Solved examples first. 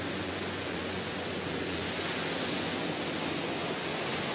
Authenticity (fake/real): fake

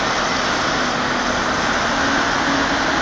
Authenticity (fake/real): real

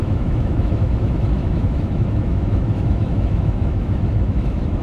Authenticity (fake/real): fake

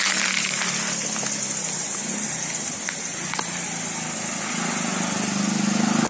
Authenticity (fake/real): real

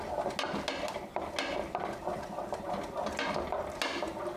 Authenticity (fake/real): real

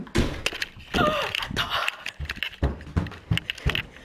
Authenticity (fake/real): real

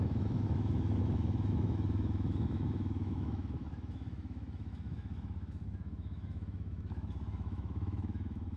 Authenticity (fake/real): fake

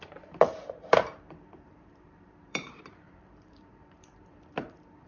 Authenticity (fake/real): fake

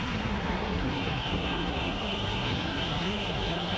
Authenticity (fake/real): fake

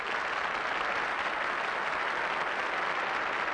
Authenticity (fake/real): real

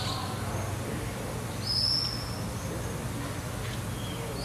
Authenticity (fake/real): real